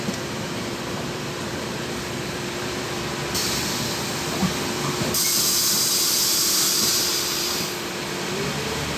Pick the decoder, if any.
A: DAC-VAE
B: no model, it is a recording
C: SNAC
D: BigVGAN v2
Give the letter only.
D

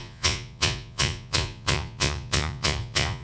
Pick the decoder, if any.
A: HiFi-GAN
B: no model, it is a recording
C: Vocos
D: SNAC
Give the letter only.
C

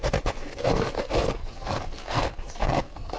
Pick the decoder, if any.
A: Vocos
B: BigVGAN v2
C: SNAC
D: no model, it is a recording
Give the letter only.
C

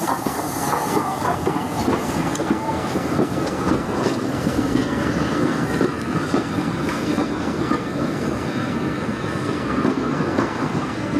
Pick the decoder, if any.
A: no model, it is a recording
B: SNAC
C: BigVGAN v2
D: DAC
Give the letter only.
B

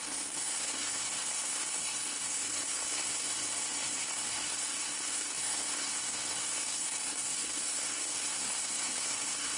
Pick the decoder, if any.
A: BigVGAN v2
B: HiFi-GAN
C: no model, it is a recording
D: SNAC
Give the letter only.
D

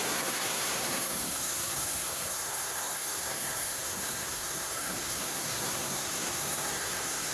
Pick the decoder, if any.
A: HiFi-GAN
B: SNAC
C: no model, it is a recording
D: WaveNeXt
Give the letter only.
B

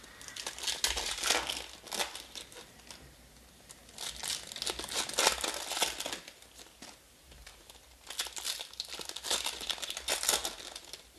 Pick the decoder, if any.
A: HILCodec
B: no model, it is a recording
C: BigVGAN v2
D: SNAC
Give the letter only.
B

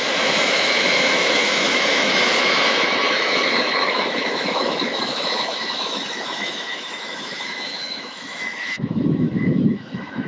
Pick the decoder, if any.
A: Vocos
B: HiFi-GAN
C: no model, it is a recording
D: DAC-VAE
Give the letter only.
D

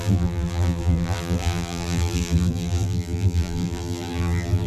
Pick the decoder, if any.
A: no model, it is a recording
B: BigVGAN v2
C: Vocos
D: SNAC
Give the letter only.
B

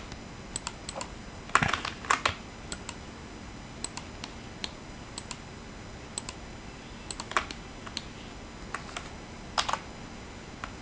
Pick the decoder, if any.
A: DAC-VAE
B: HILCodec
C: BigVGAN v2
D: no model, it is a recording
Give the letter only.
D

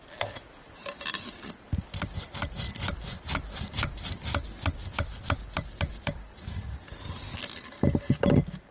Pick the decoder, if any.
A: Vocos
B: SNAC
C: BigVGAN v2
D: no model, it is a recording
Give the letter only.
C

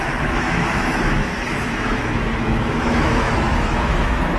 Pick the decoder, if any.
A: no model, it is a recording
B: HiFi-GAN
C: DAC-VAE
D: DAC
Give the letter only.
C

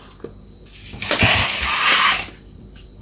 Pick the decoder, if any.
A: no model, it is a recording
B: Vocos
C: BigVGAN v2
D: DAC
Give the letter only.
A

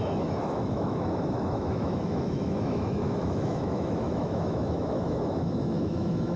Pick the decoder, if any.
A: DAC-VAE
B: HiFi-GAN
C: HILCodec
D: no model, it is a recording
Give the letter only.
A